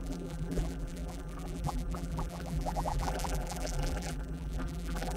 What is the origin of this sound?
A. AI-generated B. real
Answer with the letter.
A